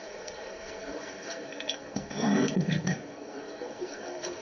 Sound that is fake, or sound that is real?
fake